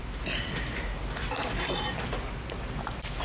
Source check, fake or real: real